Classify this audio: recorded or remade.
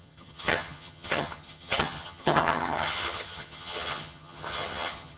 remade